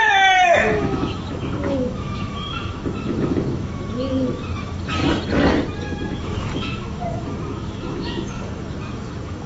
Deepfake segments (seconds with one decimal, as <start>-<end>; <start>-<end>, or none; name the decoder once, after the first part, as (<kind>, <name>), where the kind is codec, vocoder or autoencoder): 0.0-5.0 (autoencoder, DAC-VAE); 5.8-9.5